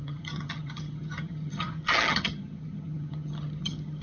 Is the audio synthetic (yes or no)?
yes